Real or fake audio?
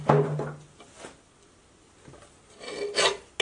real